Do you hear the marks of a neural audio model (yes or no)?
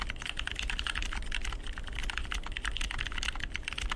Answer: no